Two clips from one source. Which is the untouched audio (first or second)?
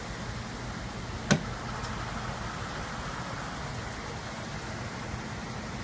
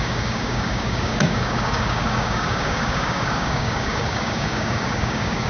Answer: first